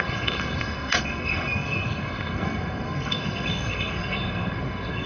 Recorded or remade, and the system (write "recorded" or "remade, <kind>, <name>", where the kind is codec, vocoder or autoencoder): remade, codec, SNAC